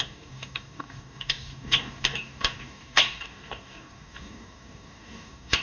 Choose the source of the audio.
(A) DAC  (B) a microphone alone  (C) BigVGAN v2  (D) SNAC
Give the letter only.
A